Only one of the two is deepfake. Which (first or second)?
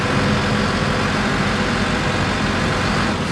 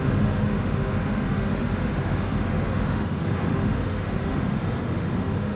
second